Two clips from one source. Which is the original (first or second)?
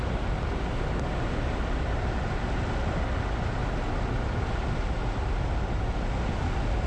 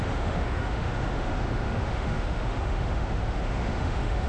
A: first